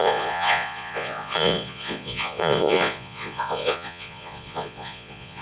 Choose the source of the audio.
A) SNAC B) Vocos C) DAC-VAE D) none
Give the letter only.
B